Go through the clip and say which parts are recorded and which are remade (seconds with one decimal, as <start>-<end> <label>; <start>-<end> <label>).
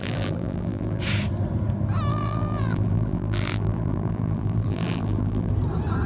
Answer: 0.0-1.0 remade; 1.0-2.1 recorded; 2.1-5.5 remade; 5.5-6.1 recorded